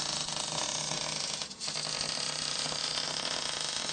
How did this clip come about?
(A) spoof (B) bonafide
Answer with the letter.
B